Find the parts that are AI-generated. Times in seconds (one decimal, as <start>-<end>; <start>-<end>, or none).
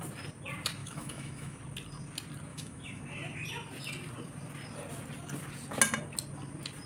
0.8-1.6; 2.5-3.0